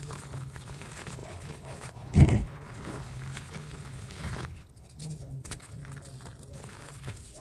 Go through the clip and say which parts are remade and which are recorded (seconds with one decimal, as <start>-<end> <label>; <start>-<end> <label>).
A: 0.0-5.8 remade; 5.8-6.5 recorded; 6.5-7.4 remade